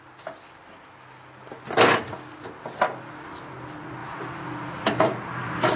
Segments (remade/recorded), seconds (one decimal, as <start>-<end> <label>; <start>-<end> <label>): 0.0-5.8 recorded